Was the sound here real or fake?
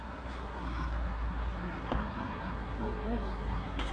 fake